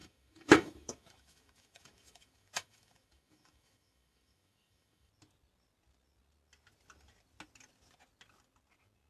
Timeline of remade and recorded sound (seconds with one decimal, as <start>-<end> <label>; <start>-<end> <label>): 0.0-5.1 remade; 5.1-9.1 recorded